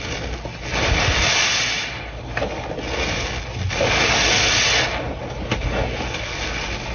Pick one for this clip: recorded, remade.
recorded